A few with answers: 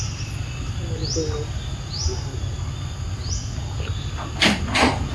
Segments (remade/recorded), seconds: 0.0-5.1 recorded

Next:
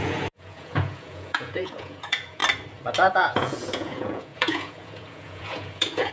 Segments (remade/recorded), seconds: 0.0-2.4 remade; 2.4-3.1 recorded; 3.1-6.1 remade

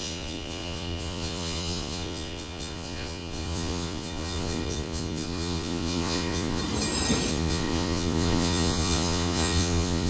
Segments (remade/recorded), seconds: 0.0-6.6 remade; 6.6-7.3 recorded; 7.3-10.1 remade

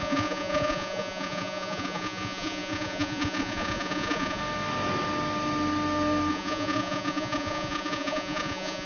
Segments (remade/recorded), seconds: 0.0-4.4 remade; 4.4-6.3 recorded; 6.3-8.9 remade

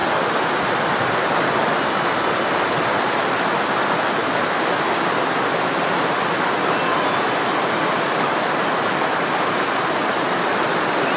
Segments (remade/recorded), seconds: 0.0-11.2 recorded